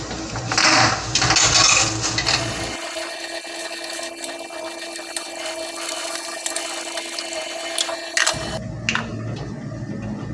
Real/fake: real